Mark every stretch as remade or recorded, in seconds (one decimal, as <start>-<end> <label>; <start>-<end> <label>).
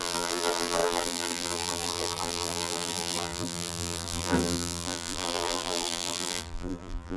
0.0-7.2 remade